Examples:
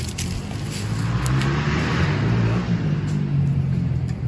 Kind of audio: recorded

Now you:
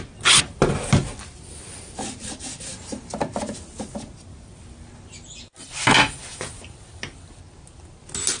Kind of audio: recorded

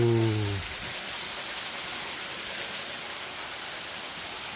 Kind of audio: recorded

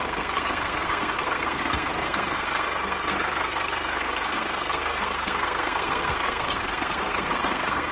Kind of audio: remade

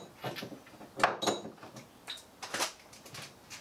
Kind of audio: recorded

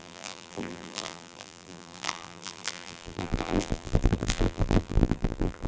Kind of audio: remade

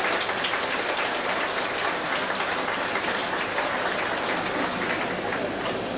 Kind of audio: recorded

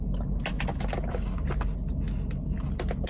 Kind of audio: recorded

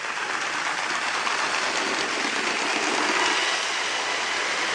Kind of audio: recorded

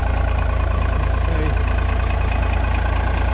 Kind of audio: recorded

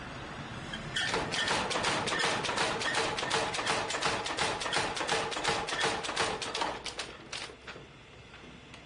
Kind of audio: recorded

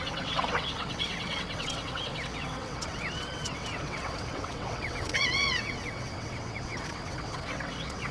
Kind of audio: remade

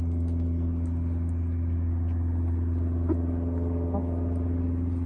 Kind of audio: recorded